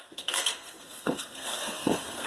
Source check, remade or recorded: remade